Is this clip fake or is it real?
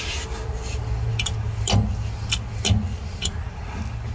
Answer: real